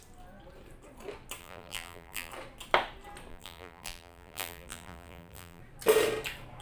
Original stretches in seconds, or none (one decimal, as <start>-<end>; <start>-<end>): 0.0-1.4; 2.3-3.3; 5.6-6.6